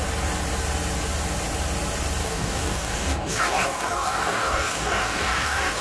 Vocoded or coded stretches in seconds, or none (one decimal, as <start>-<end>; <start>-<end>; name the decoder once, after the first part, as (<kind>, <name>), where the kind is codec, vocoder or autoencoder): 2.2-5.8 (codec, DAC)